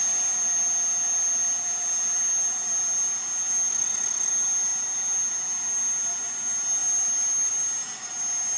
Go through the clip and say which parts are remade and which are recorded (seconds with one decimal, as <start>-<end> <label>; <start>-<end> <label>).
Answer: 0.0-3.7 recorded; 3.7-4.3 remade; 4.3-8.6 recorded